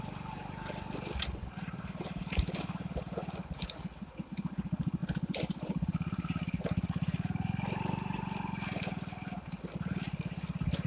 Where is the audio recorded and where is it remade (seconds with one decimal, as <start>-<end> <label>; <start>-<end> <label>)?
0.0-5.0 recorded; 5.0-6.6 remade; 6.6-10.9 recorded